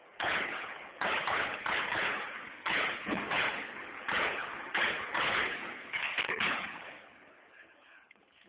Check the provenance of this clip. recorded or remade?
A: remade